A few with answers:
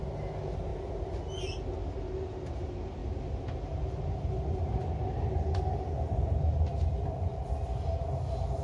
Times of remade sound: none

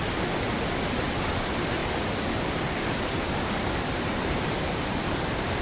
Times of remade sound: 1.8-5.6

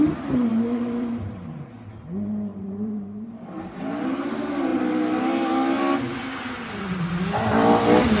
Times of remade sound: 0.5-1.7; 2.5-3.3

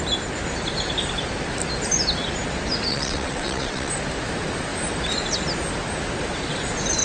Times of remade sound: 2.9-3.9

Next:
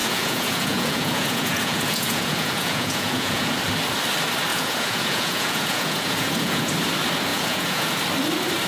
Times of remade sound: 0.0-3.5; 4.5-6.7; 7.3-8.0

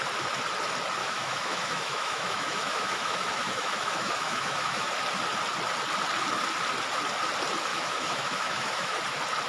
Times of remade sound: 1.0-4.9; 7.7-9.0